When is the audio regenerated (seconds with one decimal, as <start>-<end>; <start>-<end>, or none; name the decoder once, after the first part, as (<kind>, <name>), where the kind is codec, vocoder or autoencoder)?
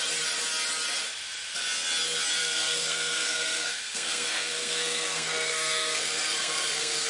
2.4-7.1 (codec, SNAC)